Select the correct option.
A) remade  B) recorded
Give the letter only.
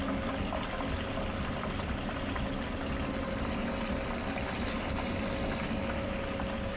B